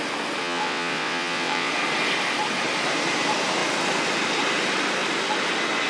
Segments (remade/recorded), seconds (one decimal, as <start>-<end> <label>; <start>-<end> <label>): 0.0-0.4 recorded; 0.4-1.7 remade; 1.7-5.9 recorded